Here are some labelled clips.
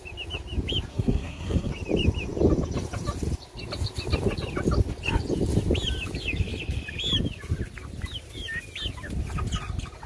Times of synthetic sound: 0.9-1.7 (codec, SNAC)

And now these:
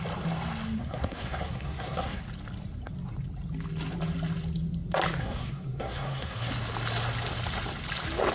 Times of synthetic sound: 0.8-2.2 (codec, SNAC); 5.2-6.5

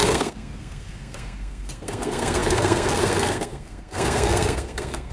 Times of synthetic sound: 0.0-5.1 (codec, SNAC)

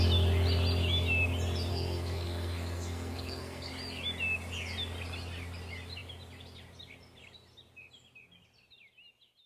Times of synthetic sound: 1.7-3.7 (codec, SNAC)